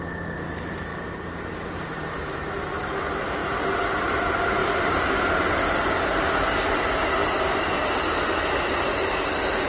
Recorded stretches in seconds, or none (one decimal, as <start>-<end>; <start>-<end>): 0.0-0.9; 2.2-3.4; 4.0-4.6; 5.2-7.2